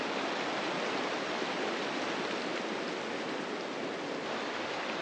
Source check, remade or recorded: recorded